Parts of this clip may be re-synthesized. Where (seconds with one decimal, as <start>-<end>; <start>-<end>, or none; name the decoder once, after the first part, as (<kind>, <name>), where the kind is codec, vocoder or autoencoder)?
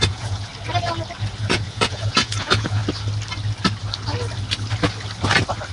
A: 0.0-0.5 (vocoder, Vocos); 1.4-2.8